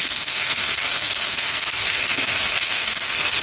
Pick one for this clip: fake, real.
fake